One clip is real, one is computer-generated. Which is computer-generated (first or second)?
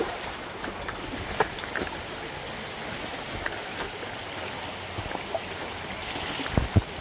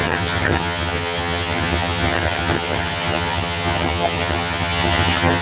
second